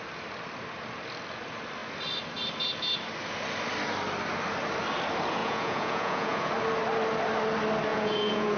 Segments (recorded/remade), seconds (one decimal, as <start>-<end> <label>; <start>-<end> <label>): 0.0-5.4 recorded; 5.4-6.5 remade; 6.5-7.9 recorded; 7.9-8.6 remade